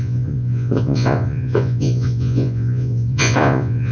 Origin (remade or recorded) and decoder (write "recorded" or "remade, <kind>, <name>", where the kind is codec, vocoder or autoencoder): remade, vocoder, Vocos